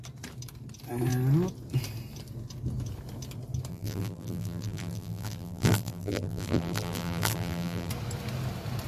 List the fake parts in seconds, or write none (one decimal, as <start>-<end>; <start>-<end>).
3.7-7.9